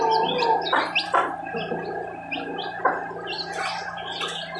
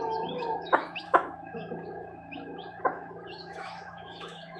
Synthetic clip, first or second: second